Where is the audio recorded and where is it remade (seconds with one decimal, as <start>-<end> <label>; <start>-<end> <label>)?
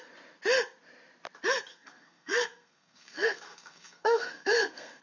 0.0-1.7 recorded; 1.7-5.0 remade